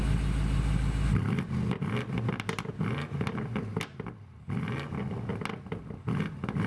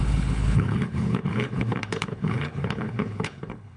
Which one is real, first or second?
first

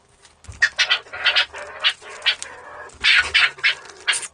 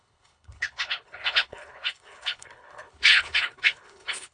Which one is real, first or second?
first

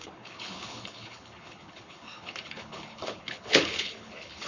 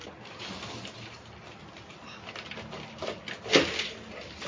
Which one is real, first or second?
second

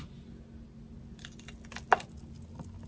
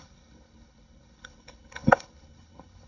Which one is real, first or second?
first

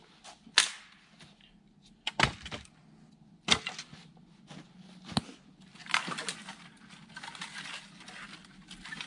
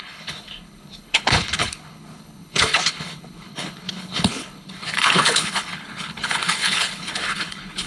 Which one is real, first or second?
first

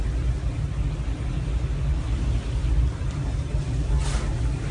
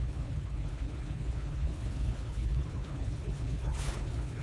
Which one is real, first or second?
first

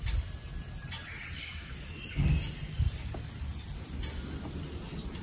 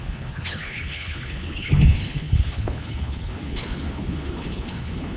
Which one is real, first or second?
first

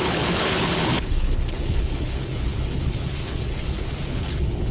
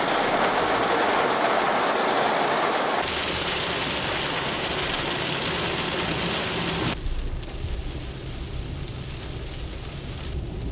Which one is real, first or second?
second